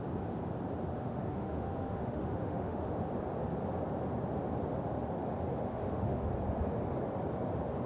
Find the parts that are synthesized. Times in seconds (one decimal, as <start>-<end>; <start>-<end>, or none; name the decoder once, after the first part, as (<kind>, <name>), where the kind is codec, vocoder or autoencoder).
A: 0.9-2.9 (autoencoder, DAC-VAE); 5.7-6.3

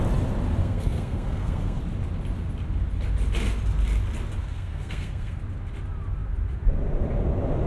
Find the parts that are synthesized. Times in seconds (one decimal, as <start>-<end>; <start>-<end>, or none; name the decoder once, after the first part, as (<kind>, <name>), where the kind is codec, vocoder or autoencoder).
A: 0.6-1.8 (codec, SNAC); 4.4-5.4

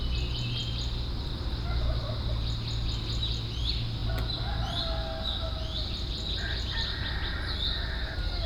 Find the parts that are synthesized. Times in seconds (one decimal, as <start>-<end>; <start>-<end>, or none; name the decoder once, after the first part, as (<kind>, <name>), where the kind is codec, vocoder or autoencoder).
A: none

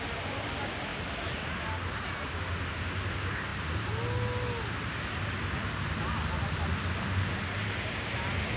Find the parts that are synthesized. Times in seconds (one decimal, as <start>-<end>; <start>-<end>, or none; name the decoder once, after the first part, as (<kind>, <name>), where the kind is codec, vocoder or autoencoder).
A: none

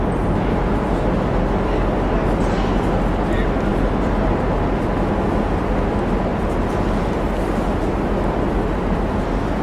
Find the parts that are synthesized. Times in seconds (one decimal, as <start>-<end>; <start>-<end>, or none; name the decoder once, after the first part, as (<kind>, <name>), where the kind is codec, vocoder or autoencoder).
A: none

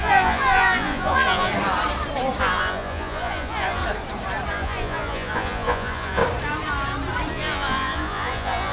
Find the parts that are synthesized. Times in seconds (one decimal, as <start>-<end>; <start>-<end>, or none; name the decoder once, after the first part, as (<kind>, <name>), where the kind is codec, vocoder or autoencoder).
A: 0.0-1.5 (vocoder, Vocos); 2.4-3.8; 4.5-6.2; 7.3-8.7